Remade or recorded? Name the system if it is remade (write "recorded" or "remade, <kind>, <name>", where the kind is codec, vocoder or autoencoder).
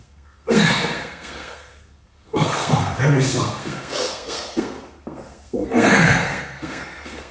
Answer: remade, codec, SNAC